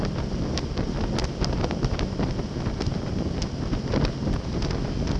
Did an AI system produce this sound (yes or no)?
no